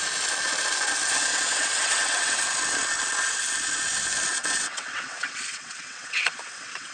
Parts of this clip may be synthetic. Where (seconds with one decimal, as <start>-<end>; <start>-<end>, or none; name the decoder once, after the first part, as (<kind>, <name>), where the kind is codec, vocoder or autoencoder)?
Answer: 1.3-2.4 (vocoder, WaveNeXt); 4.3-6.9